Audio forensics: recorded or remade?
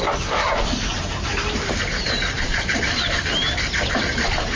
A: recorded